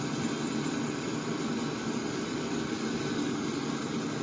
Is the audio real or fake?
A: real